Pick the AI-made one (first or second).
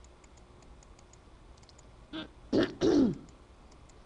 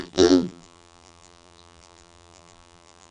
second